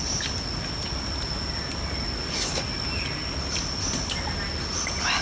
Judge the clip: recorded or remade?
recorded